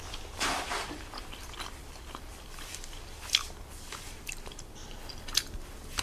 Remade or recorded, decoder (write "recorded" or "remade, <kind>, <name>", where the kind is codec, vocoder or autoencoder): remade, vocoder, BigVGAN v2